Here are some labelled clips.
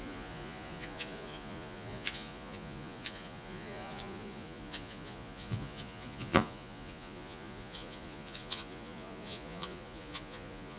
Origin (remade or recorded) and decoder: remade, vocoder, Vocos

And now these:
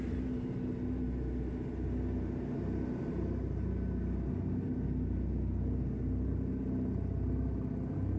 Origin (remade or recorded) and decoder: recorded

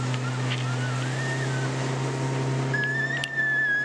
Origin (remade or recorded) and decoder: recorded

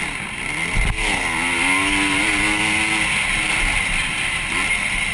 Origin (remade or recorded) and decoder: recorded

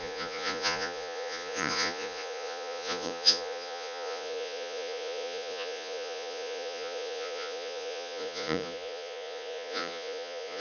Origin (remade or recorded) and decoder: remade, vocoder, Vocos